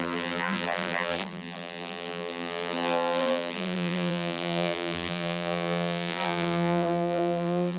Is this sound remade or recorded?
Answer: remade